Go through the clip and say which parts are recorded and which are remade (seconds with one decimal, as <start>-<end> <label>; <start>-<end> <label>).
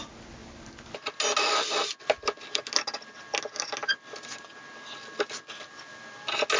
0.0-6.6 recorded